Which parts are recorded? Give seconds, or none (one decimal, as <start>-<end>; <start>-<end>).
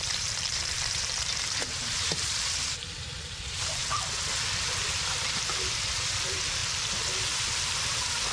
3.8-5.0; 6.6-7.3